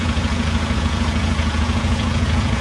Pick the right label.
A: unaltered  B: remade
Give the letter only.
B